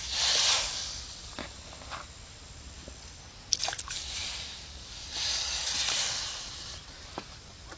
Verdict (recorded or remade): recorded